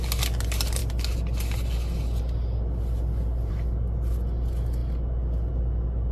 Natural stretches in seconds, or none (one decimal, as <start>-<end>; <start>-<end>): 0.0-6.1